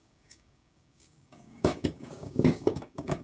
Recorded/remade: remade